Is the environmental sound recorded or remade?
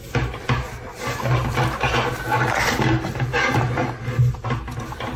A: recorded